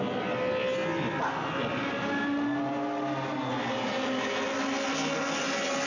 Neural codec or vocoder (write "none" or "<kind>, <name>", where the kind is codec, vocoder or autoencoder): none